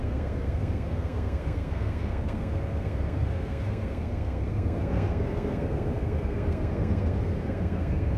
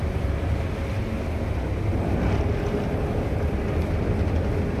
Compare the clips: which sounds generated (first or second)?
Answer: first